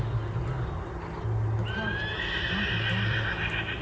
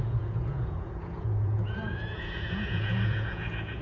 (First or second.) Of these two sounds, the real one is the first